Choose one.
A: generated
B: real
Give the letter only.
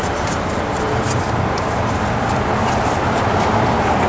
A